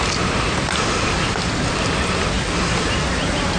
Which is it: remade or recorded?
recorded